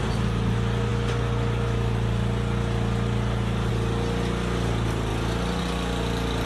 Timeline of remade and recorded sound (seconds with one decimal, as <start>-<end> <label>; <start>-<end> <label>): 0.0-6.5 recorded